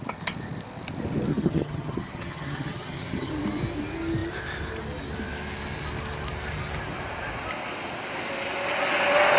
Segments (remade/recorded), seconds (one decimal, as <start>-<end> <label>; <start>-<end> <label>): 0.0-1.3 recorded; 1.3-3.3 remade; 3.3-9.4 recorded